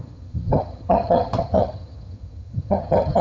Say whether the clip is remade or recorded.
remade